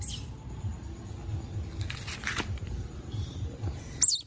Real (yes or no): yes